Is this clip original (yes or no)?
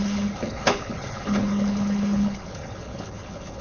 no